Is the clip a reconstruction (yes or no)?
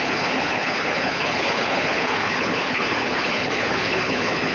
yes